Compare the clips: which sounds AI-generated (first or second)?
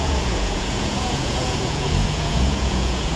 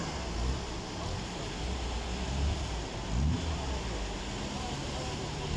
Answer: first